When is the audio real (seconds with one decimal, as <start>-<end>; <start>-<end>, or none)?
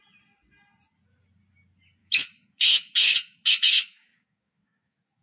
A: 0.0-2.0